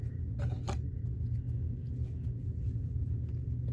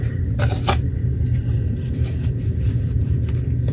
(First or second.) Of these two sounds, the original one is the first